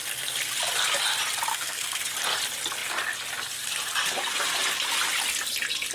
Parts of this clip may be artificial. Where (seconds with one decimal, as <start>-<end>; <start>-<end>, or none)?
1.5-2.0